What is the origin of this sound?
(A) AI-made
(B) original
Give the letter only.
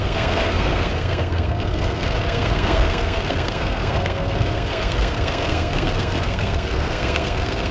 A